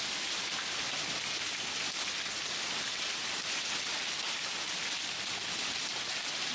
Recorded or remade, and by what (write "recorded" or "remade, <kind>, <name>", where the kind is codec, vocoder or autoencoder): recorded